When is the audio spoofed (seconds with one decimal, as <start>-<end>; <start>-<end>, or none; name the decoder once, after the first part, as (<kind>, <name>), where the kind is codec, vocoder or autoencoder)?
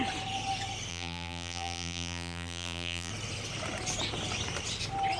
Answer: 0.9-3.1 (vocoder, BigVGAN v2)